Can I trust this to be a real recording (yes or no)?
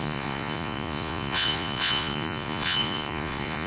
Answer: no